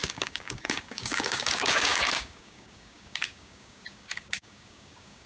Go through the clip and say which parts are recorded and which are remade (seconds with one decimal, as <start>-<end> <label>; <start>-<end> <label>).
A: 0.0-5.3 remade